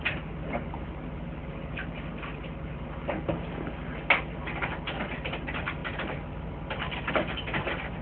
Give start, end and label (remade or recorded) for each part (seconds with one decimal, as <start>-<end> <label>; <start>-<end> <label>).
0.0-8.0 recorded